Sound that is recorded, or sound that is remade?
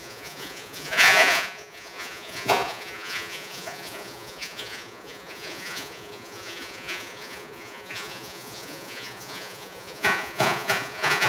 remade